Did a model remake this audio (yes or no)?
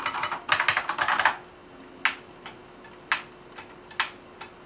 no